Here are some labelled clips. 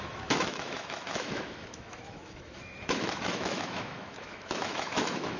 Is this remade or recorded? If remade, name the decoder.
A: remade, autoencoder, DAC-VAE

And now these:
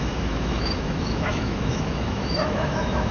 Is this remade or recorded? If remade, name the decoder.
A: remade, autoencoder, DAC-VAE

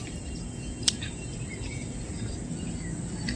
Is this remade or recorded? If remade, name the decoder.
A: recorded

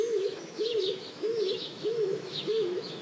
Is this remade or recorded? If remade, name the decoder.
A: remade, autoencoder, DAC-VAE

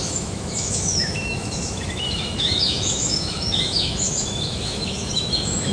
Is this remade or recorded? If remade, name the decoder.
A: remade, autoencoder, DAC-VAE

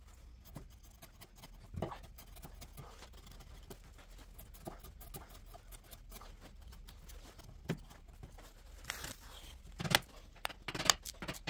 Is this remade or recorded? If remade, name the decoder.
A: recorded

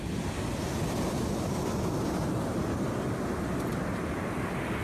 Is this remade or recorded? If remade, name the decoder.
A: recorded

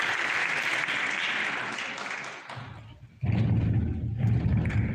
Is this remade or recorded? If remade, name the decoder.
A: recorded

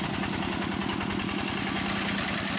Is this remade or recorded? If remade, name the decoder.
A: recorded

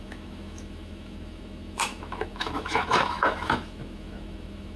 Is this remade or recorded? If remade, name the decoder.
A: remade, autoencoder, DAC-VAE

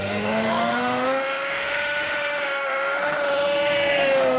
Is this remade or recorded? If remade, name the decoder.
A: remade, autoencoder, DAC-VAE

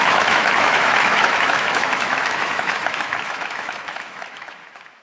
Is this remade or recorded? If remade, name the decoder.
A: remade, autoencoder, DAC-VAE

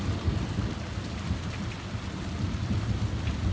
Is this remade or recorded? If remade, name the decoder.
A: recorded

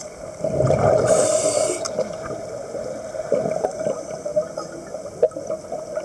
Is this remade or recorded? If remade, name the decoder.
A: recorded